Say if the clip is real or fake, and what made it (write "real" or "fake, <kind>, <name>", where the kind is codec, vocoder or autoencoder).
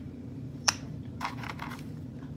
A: fake, vocoder, BigVGAN v2